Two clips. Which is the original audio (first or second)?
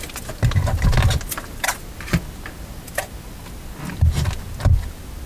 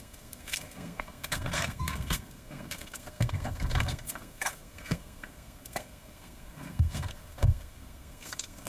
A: first